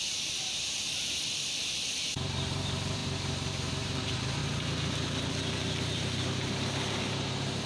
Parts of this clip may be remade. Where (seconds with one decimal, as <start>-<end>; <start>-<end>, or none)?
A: 0.0-4.4; 5.3-7.7